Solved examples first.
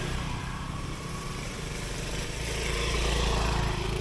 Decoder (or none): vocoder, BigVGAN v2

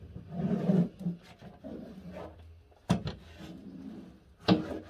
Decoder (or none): none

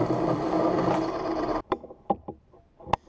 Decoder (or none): vocoder, BigVGAN v2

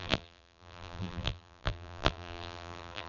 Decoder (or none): vocoder, BigVGAN v2